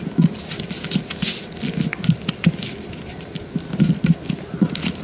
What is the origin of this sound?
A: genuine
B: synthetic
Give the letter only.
A